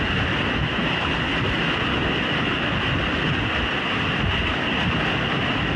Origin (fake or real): real